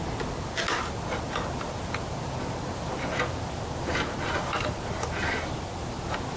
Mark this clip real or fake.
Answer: real